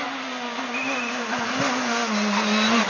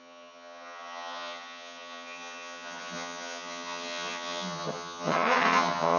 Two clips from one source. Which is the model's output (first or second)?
second